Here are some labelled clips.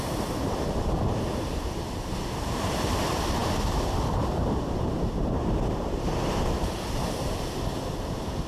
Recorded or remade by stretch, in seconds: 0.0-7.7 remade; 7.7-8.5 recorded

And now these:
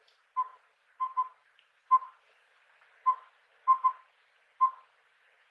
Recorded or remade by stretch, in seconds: 0.0-0.5 recorded; 0.5-1.8 remade; 1.8-5.5 recorded

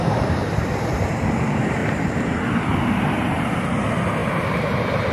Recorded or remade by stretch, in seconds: 0.0-0.4 remade; 0.4-0.9 recorded; 0.9-1.8 remade; 1.8-2.7 recorded; 2.7-5.1 remade

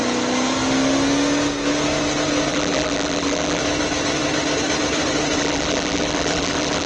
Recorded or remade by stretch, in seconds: 0.0-2.5 recorded; 2.5-3.6 remade; 3.6-5.4 recorded; 5.4-6.9 remade

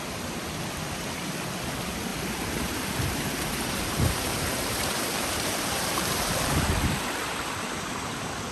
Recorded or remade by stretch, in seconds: 0.0-2.1 recorded; 2.1-6.6 remade; 6.6-8.5 recorded

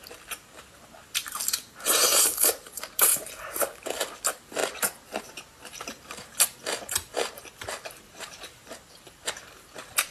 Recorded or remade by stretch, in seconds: 0.0-4.6 remade; 4.6-5.2 recorded; 5.2-10.1 remade

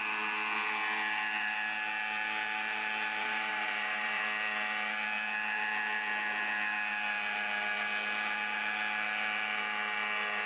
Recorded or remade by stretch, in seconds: 0.0-3.2 recorded; 3.2-4.2 remade; 4.2-10.5 recorded